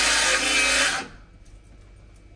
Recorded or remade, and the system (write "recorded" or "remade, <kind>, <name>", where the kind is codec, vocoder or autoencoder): recorded